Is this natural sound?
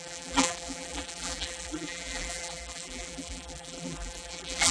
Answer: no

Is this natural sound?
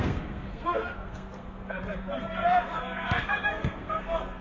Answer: no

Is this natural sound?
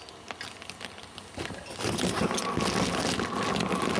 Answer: yes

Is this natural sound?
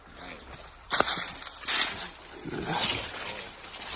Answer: yes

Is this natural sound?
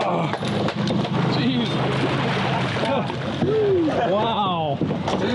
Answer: yes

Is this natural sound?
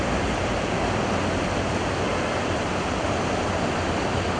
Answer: yes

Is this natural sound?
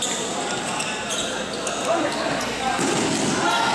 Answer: yes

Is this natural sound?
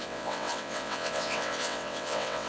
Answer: no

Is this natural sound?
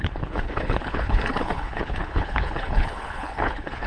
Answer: no